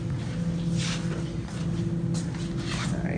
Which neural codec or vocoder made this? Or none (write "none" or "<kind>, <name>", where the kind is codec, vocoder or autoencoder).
none